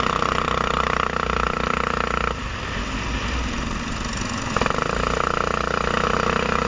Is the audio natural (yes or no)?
yes